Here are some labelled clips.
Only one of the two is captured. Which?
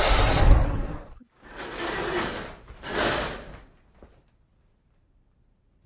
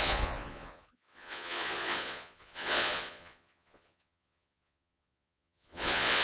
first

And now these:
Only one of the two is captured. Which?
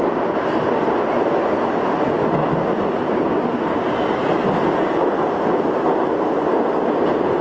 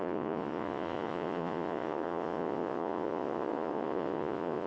first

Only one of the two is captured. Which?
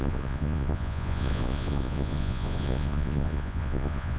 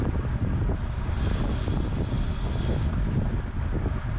second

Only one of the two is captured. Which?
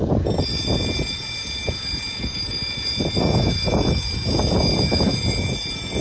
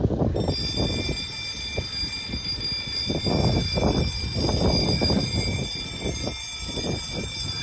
second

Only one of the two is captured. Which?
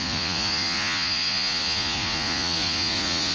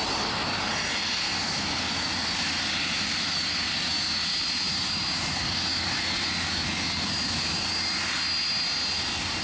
second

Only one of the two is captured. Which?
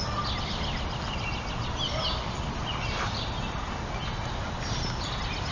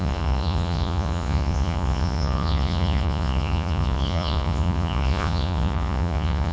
first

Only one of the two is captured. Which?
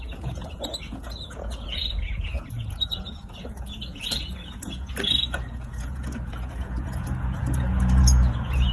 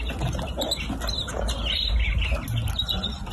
second